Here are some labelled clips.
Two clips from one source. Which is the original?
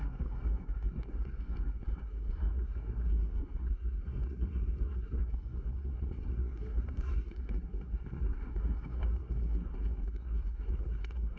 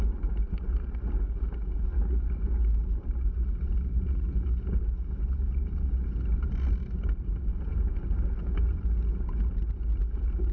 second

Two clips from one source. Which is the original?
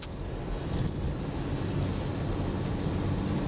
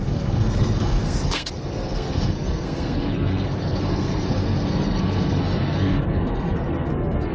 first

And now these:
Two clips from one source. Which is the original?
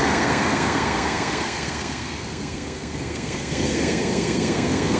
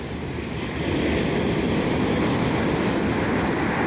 second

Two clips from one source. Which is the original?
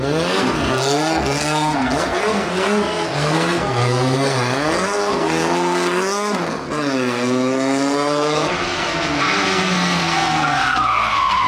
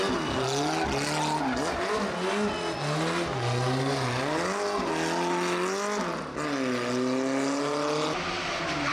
second